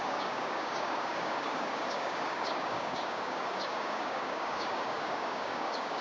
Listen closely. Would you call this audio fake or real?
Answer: fake